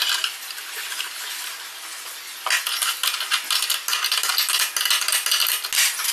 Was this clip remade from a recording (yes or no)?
no